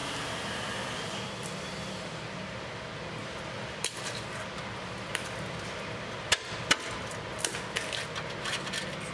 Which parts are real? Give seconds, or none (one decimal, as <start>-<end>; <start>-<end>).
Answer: 2.7-3.2; 7.0-9.1